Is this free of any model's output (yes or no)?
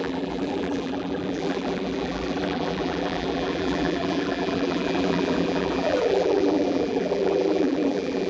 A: no